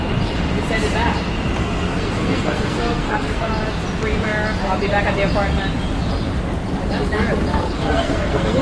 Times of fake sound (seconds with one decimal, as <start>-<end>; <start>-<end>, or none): 1.6-3.5; 7.5-8.6